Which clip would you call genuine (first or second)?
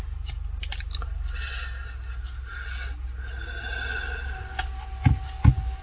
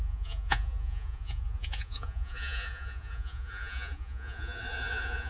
first